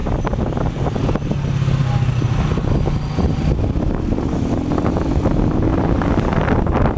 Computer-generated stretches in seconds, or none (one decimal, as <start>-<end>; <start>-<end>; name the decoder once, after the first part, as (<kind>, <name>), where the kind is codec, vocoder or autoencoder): none